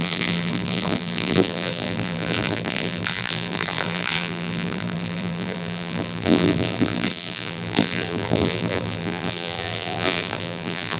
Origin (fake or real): fake